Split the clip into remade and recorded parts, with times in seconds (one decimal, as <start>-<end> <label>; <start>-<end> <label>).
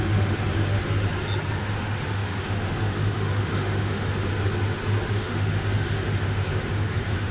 0.0-0.8 remade; 0.8-1.6 recorded; 1.6-4.3 remade; 4.3-5.1 recorded; 5.1-7.3 remade